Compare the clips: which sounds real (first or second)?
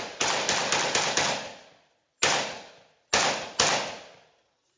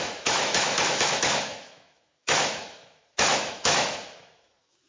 first